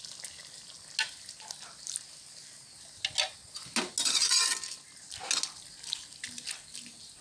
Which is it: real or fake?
real